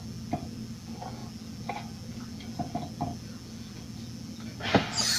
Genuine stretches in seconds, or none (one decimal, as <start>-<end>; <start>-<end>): 0.0-5.2